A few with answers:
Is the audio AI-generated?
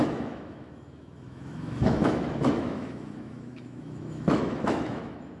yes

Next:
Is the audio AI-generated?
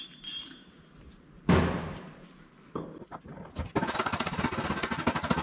no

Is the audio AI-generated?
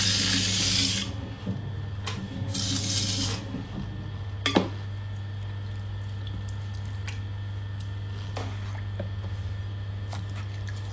no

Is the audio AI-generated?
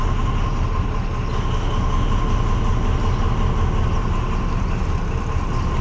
no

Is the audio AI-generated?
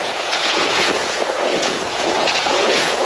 yes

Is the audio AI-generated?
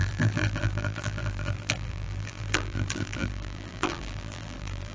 yes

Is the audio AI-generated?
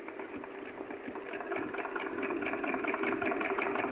no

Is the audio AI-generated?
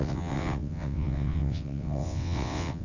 yes